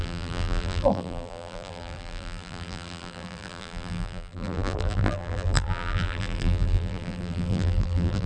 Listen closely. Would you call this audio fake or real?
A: fake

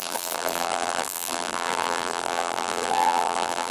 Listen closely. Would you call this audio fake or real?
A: fake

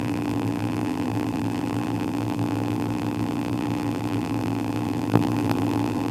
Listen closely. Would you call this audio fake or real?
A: fake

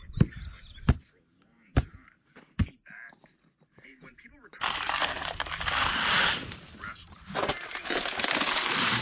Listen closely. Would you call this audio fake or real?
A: fake